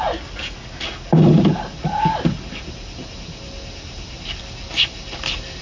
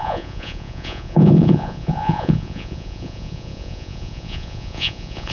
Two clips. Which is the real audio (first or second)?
first